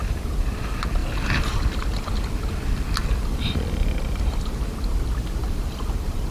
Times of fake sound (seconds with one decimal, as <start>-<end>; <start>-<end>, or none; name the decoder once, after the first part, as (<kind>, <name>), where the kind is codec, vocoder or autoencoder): 5.4-6.3 (vocoder, BigVGAN v2)